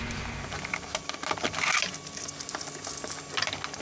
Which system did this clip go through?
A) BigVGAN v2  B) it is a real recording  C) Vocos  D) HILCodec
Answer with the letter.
B